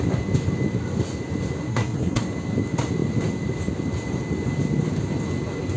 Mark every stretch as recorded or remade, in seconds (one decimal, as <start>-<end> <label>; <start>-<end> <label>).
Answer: 0.0-1.7 recorded; 1.7-2.2 remade; 2.2-5.8 recorded